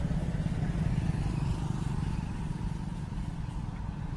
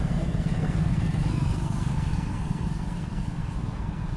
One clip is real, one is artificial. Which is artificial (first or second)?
second